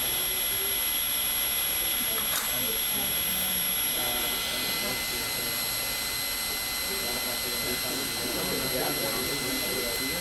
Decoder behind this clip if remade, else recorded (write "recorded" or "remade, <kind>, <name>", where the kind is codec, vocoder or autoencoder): recorded